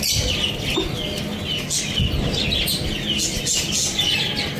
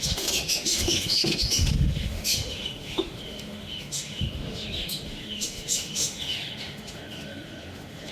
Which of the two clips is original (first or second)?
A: first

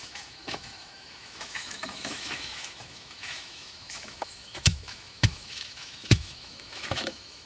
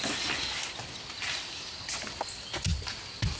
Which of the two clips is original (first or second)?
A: second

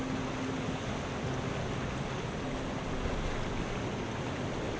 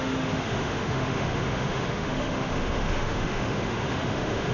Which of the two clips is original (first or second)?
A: first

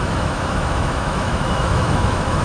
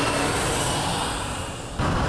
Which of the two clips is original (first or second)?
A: second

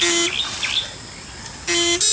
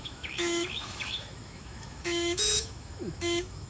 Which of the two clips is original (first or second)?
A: first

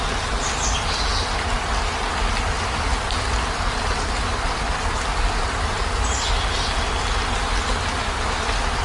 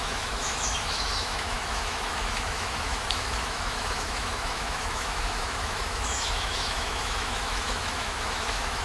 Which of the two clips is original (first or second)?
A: first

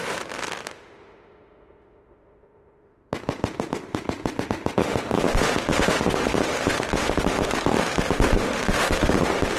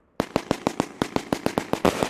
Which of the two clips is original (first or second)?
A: second